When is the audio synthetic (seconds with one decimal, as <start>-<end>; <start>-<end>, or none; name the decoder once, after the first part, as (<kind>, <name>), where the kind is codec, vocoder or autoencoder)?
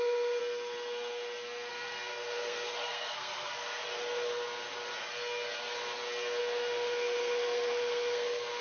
0.0-0.4 (codec, SNAC); 1.7-3.8; 6.4-8.6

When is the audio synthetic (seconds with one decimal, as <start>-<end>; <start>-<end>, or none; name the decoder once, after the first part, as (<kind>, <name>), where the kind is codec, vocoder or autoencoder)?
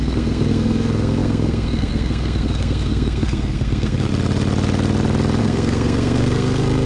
0.0-4.1 (codec, SNAC); 5.4-6.9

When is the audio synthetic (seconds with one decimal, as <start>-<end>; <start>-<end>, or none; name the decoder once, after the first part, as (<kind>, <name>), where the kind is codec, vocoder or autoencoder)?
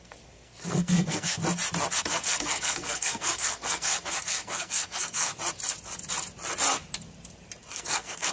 0.0-1.4 (codec, SNAC); 2.0-5.3; 7.7-8.3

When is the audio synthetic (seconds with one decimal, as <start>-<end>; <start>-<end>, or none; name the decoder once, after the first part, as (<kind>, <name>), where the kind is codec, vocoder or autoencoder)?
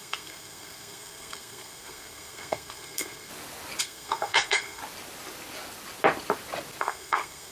0.0-3.3 (codec, SNAC); 3.8-4.8; 6.8-7.5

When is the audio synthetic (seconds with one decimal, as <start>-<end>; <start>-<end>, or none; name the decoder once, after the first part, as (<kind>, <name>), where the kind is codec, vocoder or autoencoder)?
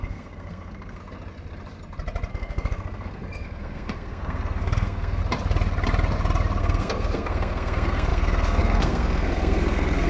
0.0-1.0 (codec, SNAC); 2.3-5.2; 6.6-10.1